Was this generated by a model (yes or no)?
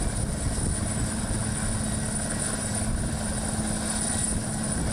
no